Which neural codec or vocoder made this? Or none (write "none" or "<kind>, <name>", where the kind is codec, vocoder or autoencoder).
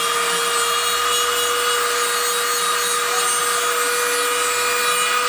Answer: none